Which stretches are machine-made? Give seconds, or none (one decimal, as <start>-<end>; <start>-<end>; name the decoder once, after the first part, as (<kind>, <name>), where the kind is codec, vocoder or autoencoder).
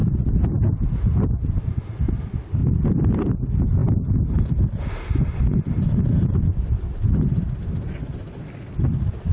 none